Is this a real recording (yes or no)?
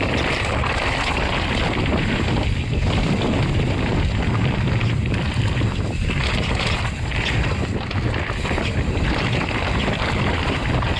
no